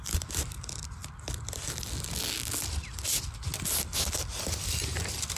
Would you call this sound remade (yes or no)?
no